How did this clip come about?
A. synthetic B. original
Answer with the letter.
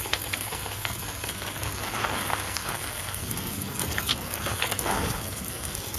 A